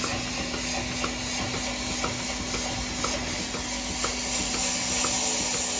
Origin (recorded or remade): recorded